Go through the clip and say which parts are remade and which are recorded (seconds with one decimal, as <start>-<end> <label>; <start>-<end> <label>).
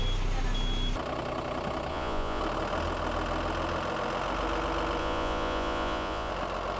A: 0.0-1.9 recorded; 1.9-2.4 remade; 2.4-5.0 recorded; 5.0-6.3 remade; 6.3-6.8 recorded